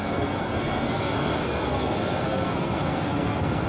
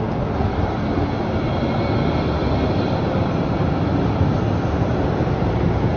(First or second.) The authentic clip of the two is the second